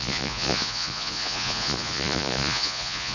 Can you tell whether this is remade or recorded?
remade